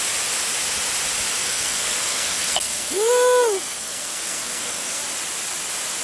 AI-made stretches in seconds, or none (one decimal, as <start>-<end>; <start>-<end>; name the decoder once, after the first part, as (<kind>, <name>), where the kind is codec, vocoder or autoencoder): 1.4-5.0 (codec, SNAC)